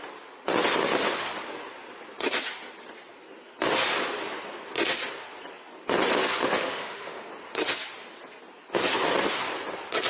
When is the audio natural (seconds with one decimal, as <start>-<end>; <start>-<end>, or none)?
0.0-6.6; 7.3-10.1